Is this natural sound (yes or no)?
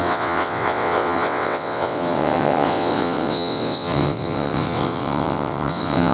no